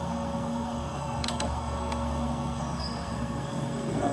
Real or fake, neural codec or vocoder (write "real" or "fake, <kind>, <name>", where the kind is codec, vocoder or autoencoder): fake, codec, SNAC